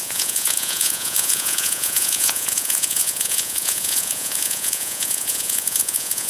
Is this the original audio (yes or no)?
no